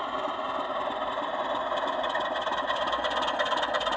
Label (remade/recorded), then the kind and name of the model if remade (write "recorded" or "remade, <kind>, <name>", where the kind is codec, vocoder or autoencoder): recorded